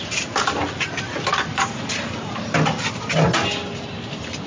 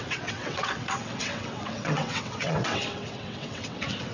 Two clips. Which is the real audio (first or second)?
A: first